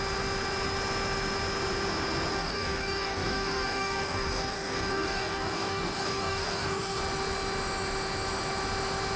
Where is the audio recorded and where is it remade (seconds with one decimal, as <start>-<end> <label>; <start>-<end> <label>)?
0.0-2.3 recorded; 2.3-7.0 remade; 7.0-9.2 recorded